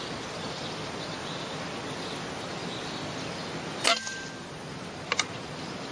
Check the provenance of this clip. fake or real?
real